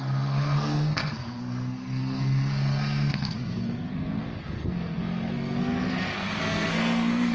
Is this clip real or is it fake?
fake